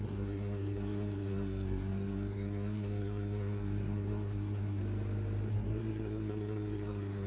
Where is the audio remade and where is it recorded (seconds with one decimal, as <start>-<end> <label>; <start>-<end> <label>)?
0.0-4.8 remade; 4.8-5.5 recorded; 5.5-7.3 remade